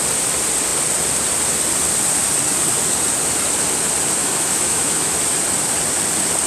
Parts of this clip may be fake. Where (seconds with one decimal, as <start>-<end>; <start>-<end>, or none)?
4.2-5.2